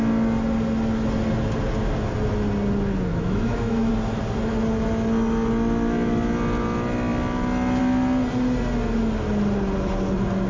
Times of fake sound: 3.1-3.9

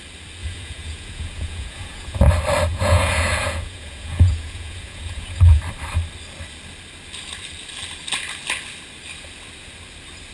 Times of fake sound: 0.4-2.3; 2.7-5.6

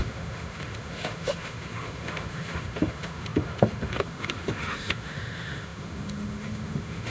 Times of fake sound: 0.0-7.1